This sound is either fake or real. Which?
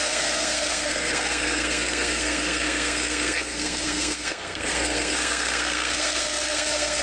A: fake